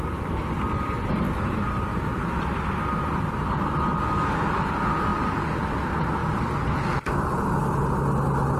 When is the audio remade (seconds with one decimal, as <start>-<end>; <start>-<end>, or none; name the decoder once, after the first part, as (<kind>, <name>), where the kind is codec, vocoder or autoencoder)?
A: none